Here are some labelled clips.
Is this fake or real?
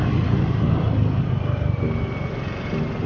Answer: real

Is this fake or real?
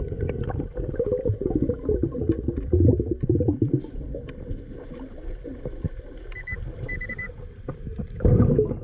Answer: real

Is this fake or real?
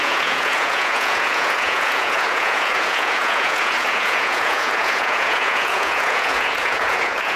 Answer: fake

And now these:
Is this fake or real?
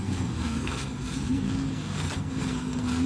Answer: fake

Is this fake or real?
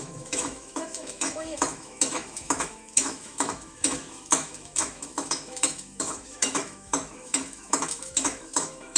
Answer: fake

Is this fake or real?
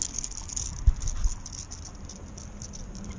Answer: real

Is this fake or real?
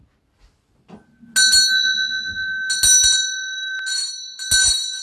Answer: real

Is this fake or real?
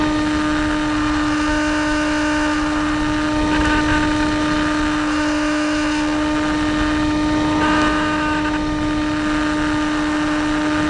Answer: real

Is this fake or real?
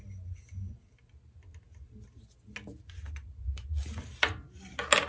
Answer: real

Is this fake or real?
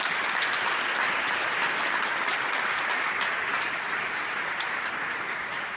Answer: real